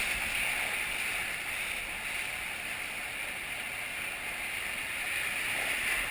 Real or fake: real